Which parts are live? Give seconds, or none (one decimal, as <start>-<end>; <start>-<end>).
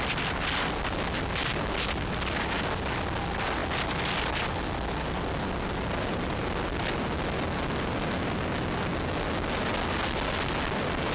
0.0-11.1